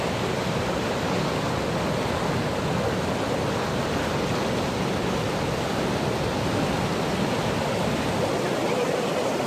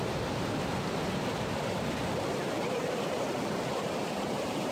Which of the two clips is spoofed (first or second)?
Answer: second